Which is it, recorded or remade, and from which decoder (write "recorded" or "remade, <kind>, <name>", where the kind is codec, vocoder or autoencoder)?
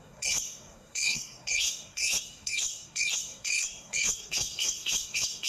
remade, codec, SNAC